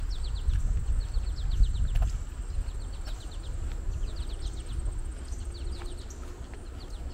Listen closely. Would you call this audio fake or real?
real